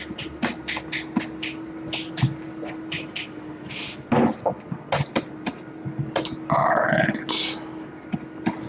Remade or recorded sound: recorded